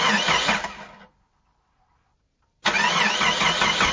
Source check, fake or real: real